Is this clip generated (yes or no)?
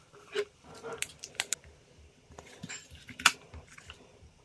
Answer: no